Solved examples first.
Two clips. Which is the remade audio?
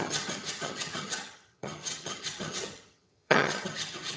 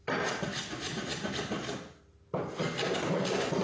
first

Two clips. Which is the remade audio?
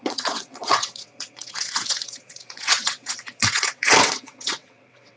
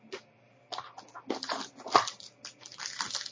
first